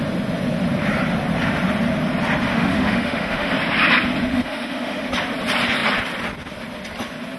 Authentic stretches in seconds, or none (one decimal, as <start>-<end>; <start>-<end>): 0.0-2.5; 3.5-4.3; 5.1-7.4